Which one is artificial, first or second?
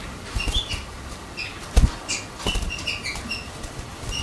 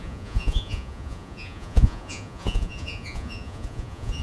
second